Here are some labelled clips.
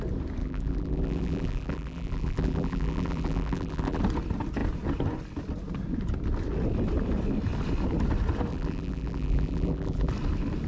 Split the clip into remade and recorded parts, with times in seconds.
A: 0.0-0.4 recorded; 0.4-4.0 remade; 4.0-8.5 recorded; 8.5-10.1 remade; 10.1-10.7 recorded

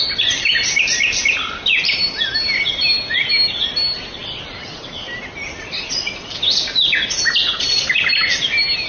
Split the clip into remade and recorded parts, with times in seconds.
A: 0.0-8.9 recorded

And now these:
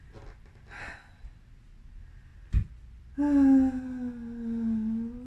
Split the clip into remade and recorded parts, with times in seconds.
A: 0.0-5.3 recorded

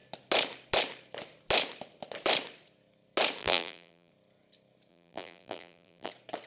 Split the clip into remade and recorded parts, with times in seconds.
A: 0.0-3.4 recorded; 3.4-4.1 remade; 4.1-4.9 recorded; 4.9-6.1 remade; 6.1-6.5 recorded

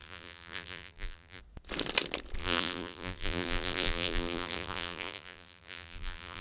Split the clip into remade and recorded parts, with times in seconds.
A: 0.0-1.4 remade; 1.4-2.4 recorded; 2.4-6.4 remade

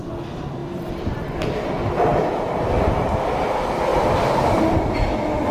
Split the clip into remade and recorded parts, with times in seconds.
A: 0.0-5.5 recorded